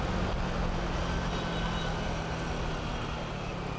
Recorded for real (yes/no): yes